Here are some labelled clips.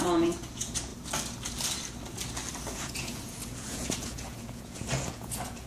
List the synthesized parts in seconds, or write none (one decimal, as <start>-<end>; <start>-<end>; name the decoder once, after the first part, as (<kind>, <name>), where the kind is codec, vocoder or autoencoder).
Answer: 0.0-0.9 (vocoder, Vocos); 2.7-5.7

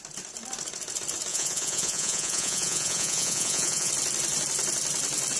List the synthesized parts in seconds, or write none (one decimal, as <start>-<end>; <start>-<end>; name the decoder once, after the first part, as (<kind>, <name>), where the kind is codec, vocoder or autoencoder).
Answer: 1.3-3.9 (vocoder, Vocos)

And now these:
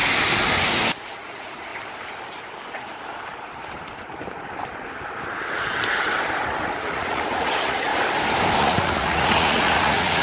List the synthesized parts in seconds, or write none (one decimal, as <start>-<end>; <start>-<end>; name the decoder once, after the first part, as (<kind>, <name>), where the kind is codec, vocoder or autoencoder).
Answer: 1.0-1.7 (vocoder, Vocos); 6.8-7.9; 8.6-10.2

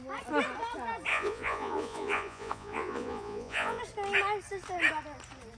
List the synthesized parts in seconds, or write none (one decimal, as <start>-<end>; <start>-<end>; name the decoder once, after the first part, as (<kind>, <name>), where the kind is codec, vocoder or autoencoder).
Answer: 1.1-3.8 (vocoder, Vocos)

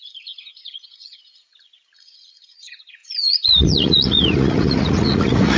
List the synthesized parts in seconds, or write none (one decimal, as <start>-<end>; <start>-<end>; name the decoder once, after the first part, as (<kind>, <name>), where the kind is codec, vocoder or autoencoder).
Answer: 0.0-5.6 (vocoder, Vocos)

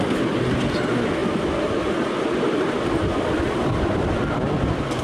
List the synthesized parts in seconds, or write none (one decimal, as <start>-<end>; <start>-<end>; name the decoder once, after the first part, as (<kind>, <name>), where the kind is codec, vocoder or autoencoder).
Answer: none